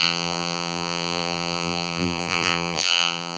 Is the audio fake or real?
fake